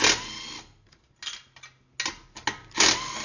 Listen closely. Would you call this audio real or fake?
real